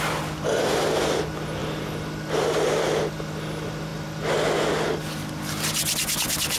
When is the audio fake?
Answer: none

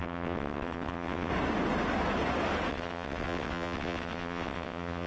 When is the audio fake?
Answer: 0.0-1.3 (vocoder, WaveNeXt); 2.7-5.1

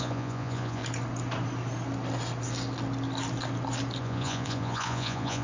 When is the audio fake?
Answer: 0.0-0.8 (vocoder, Vocos); 4.0-5.4

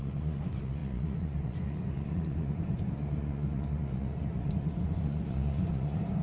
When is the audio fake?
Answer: 0.0-6.2 (vocoder, Vocos)

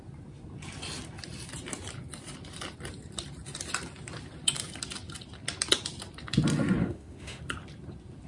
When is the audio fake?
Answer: 6.8-7.4 (autoencoder, DAC-VAE)

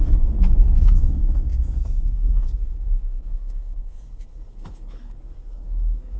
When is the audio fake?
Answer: 0.0-6.2 (codec, SNAC)

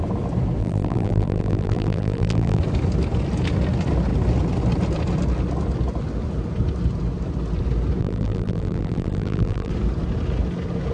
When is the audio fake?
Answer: 0.6-2.6 (vocoder, BigVGAN v2); 8.0-9.7